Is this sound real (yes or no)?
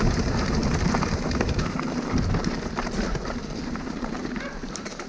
no